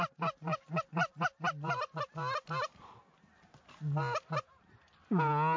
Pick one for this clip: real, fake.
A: real